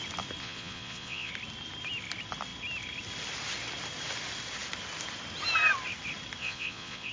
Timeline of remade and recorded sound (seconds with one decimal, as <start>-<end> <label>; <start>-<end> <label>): 0.0-0.4 recorded; 0.4-1.3 remade; 1.3-6.4 recorded; 6.4-7.1 remade